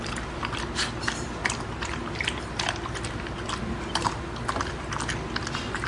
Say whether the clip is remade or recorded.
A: recorded